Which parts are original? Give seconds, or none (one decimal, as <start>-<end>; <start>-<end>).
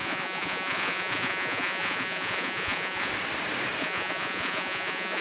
3.1-3.8